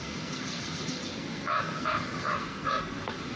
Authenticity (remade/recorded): remade